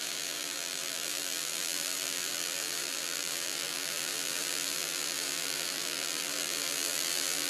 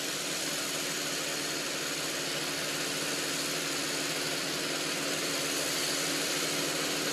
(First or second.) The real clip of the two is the second